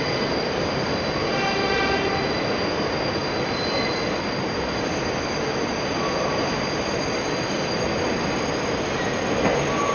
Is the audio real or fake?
real